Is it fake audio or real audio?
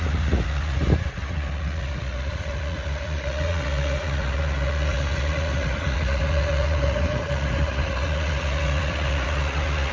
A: fake